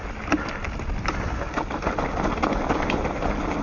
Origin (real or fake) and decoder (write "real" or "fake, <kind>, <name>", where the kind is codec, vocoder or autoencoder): real